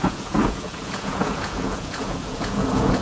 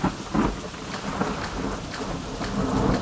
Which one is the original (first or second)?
second